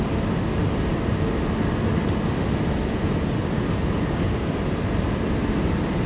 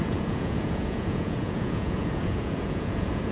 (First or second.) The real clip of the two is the first